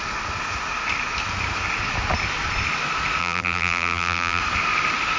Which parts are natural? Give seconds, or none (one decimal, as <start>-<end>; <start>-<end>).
0.0-3.2; 4.4-5.2